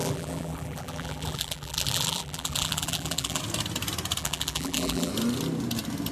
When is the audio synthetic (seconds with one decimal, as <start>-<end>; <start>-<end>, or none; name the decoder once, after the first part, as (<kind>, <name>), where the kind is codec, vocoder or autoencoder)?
0.0-3.4 (vocoder, BigVGAN v2); 4.2-5.1